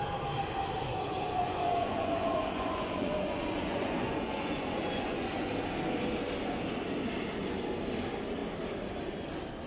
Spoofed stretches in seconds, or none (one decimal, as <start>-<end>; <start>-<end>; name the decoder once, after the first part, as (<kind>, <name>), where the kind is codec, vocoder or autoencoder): 0.8-5.5 (vocoder, Vocos)